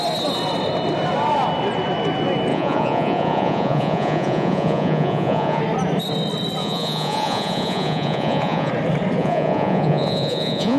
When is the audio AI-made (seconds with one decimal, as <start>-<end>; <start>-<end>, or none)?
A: 2.5-5.6; 6.6-8.7; 9.2-10.8